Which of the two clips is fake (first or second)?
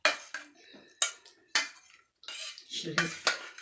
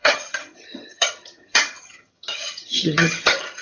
second